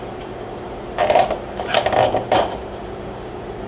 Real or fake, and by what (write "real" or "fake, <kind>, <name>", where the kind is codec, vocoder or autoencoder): fake, vocoder, BigVGAN v2